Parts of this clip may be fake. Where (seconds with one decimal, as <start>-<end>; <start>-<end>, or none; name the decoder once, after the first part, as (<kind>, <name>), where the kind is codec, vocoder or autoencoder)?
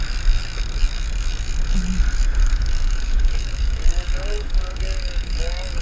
2.4-5.8 (codec, DAC)